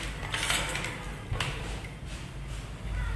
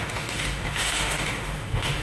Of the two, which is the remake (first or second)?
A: second